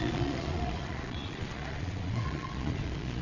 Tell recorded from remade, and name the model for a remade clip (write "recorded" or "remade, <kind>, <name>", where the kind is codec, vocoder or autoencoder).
remade, vocoder, Vocos